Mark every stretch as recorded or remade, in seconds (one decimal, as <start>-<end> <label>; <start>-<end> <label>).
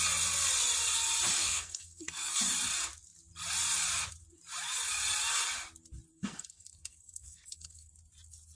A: 0.0-1.4 recorded; 1.4-2.4 remade; 2.4-6.1 recorded; 6.1-7.9 remade; 7.9-8.5 recorded